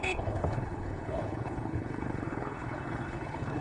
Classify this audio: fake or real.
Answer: fake